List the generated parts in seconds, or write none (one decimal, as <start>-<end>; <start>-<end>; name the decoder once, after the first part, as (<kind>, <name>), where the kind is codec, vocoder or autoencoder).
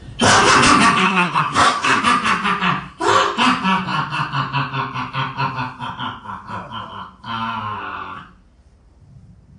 1.0-2.0 (codec, SNAC)